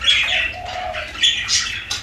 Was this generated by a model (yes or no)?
no